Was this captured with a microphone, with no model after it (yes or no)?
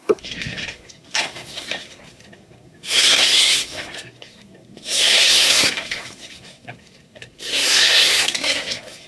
no